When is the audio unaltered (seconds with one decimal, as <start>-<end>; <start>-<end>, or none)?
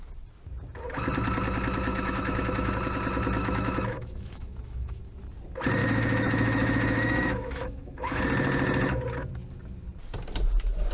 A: 0.0-1.9; 2.7-3.4; 5.0-5.8; 8.2-10.9